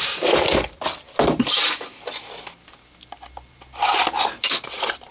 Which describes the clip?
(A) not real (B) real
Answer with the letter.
B